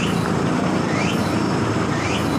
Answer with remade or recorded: recorded